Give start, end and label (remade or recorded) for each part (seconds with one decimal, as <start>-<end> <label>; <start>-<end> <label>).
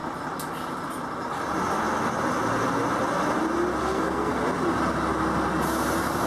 0.0-3.8 recorded; 3.8-4.4 remade; 4.4-6.3 recorded